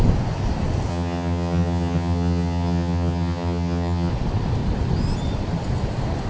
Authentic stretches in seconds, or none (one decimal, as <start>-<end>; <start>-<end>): 0.0-0.9; 4.1-6.3